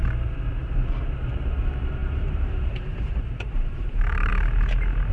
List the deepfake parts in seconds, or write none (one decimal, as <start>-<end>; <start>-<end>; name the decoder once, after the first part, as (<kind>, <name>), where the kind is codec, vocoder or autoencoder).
2.0-4.3 (vocoder, BigVGAN v2)